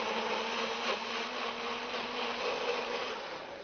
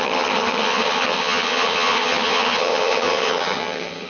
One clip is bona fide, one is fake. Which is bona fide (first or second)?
first